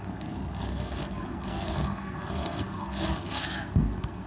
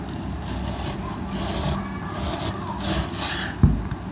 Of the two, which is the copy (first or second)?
first